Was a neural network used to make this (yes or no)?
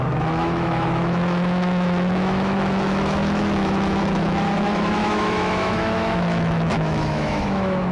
yes